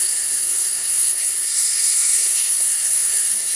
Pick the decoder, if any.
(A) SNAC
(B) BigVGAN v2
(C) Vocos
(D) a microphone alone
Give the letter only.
A